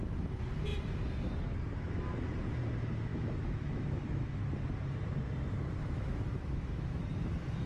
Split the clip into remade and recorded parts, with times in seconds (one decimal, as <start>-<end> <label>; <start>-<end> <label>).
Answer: 0.0-3.1 recorded; 3.1-4.4 remade; 4.4-5.8 recorded; 5.8-7.0 remade; 7.0-7.7 recorded